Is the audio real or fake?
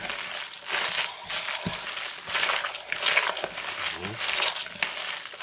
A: real